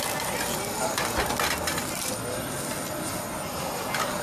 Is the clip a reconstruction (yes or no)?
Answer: no